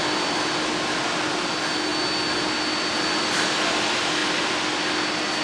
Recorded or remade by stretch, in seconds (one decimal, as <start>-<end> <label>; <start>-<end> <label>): 0.0-5.4 recorded